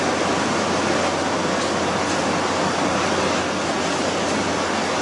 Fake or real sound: real